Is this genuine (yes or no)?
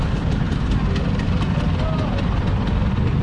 yes